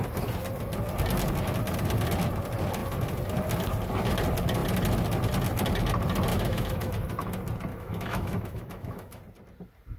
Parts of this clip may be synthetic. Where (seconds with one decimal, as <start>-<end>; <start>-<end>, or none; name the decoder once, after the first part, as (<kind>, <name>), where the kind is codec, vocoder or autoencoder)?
6.3-6.9 (autoencoder, DAC-VAE); 7.7-9.2